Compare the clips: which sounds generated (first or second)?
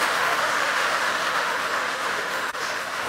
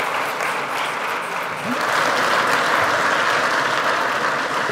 first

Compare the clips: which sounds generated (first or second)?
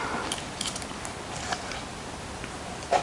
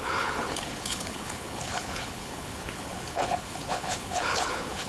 second